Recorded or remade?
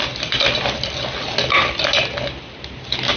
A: recorded